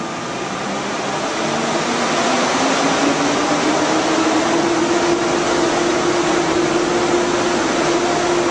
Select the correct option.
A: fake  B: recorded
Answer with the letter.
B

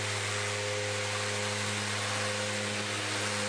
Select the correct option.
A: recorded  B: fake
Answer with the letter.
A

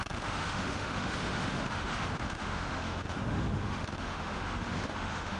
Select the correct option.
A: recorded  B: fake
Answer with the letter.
B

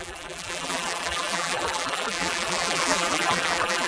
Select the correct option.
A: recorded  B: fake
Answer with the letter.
B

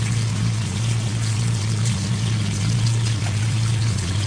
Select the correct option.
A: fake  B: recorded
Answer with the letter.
A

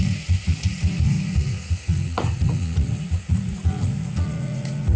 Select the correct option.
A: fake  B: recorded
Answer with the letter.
A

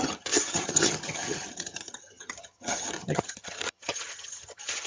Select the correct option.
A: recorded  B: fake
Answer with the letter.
B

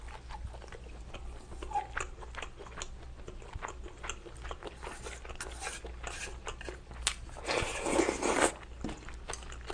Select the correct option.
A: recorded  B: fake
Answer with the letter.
A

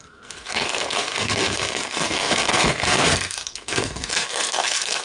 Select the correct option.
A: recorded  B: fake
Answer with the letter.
B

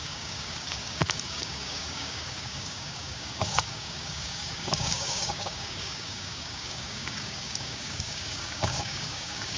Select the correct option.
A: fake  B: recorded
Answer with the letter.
A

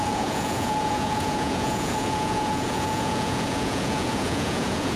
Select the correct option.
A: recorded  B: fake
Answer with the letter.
B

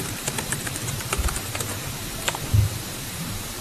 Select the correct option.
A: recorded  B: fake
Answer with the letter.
B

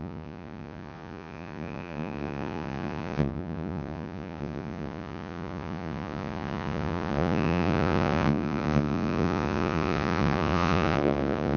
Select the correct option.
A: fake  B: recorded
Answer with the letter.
A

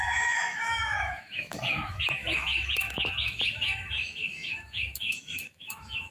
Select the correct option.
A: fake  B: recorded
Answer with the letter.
A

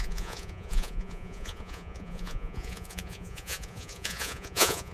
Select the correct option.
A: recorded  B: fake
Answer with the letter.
B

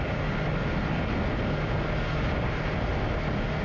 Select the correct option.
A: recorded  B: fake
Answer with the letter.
A